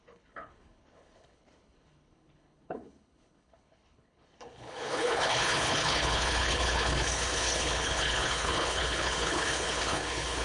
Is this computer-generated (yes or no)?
yes